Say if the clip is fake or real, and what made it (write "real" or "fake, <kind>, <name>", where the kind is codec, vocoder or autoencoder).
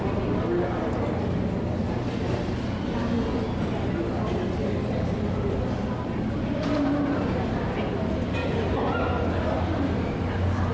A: real